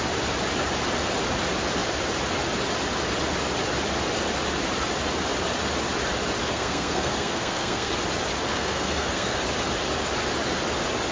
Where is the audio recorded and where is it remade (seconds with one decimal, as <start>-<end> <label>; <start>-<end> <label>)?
0.0-6.4 recorded; 6.4-7.9 remade; 7.9-8.5 recorded; 8.5-9.4 remade; 9.4-11.1 recorded

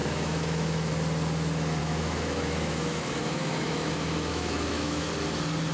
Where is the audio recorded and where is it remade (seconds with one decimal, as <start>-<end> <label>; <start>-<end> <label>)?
0.0-0.9 remade; 0.9-1.8 recorded; 1.8-5.1 remade; 5.1-5.7 recorded

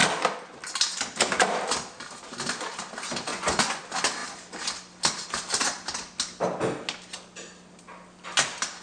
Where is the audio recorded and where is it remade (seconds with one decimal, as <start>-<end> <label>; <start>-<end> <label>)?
0.0-3.3 recorded; 3.3-3.8 remade; 3.8-8.8 recorded

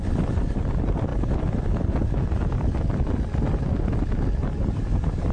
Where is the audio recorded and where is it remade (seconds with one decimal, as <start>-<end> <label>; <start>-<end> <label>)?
0.0-5.3 recorded

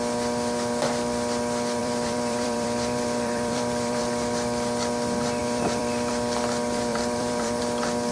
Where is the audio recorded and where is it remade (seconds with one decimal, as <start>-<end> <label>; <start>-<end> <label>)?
0.0-1.8 recorded; 1.8-4.0 remade; 4.0-5.4 recorded; 5.4-6.1 remade; 6.1-6.9 recorded; 6.9-7.6 remade; 7.6-8.1 recorded

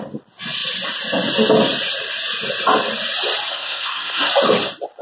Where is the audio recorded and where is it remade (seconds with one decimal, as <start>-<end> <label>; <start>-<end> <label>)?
0.0-3.5 recorded; 3.5-4.3 remade; 4.3-5.0 recorded

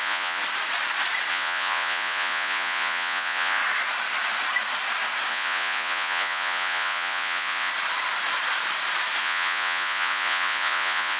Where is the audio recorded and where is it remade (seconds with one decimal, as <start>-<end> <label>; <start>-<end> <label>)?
0.0-0.4 remade; 0.4-1.3 recorded; 1.3-3.6 remade; 3.6-5.3 recorded; 5.3-7.7 remade; 7.7-9.2 recorded; 9.2-11.2 remade

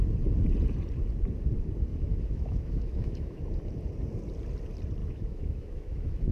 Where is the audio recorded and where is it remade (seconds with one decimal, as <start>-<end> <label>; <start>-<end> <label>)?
0.0-1.9 recorded; 1.9-3.4 remade; 3.4-5.0 recorded; 5.0-6.3 remade